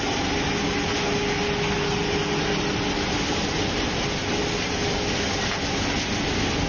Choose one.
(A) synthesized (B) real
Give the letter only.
B